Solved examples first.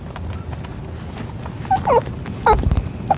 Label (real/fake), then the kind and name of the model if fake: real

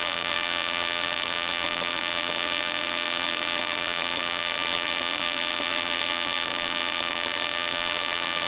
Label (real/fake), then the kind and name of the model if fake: fake, vocoder, BigVGAN v2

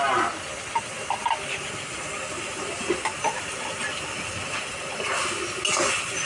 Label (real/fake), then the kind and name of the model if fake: real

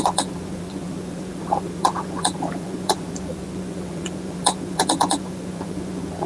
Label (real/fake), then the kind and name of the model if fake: fake, vocoder, Vocos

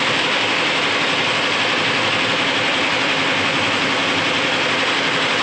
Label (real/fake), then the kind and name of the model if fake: real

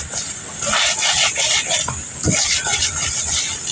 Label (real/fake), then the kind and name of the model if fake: real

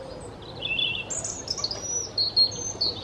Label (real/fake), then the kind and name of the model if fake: real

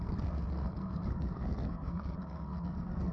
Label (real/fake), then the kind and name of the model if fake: fake, codec, SNAC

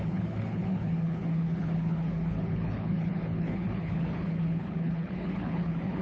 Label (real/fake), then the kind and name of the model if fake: fake, codec, HILCodec